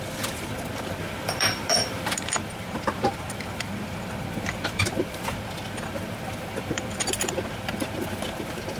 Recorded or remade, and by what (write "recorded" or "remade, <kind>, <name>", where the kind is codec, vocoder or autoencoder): remade, vocoder, BigVGAN v2